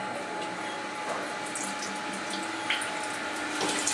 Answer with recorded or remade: recorded